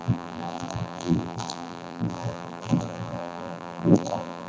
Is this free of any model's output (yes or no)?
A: no